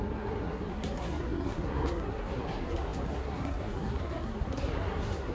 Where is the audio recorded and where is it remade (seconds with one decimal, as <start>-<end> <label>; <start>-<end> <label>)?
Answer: 0.0-5.3 remade